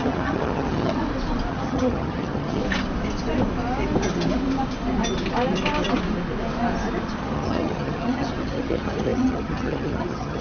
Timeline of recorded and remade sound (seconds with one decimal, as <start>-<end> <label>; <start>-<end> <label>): 0.0-1.0 remade; 1.0-1.5 recorded; 1.5-2.6 remade; 2.6-7.2 recorded; 7.2-10.4 remade